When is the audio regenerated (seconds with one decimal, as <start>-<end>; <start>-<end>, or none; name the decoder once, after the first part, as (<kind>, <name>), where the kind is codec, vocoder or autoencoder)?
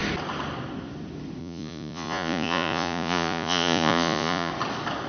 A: 1.4-4.5 (vocoder, Vocos)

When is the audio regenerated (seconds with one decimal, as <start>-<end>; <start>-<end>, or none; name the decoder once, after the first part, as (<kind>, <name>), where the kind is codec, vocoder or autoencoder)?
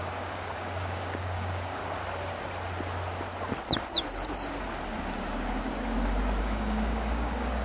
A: 0.0-1.8 (codec, DAC); 6.4-7.6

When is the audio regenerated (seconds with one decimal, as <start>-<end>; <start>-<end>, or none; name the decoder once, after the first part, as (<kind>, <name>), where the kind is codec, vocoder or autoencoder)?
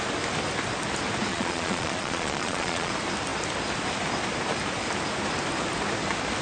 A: 1.3-2.9 (vocoder, Vocos)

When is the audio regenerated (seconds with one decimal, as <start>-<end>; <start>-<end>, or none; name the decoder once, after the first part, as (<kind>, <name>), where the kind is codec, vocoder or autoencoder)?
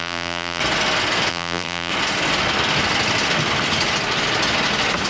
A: 0.0-0.6 (vocoder, BigVGAN v2); 1.3-1.9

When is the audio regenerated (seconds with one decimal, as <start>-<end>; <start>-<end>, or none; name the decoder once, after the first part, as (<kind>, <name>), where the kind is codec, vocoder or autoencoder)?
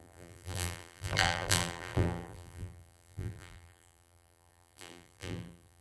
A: 0.0-5.8 (vocoder, BigVGAN v2)